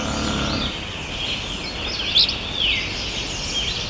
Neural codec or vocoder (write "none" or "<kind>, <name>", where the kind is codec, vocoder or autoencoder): none